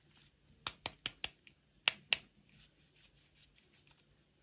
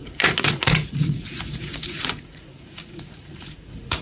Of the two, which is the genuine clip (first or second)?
first